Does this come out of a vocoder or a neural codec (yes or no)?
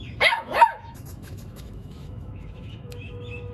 yes